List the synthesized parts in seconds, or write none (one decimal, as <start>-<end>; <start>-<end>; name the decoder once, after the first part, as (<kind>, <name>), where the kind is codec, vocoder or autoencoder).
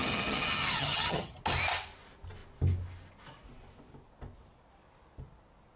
0.0-1.4 (vocoder, HiFi-GAN)